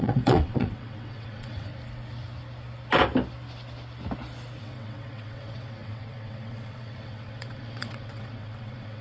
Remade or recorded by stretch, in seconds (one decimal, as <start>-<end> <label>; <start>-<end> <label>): 0.0-1.7 remade; 1.7-4.6 recorded; 4.6-9.0 remade